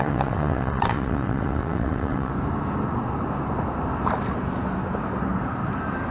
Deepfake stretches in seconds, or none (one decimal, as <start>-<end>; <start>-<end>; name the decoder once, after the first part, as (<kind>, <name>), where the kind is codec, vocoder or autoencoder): 0.0-2.3 (vocoder, WaveNeXt)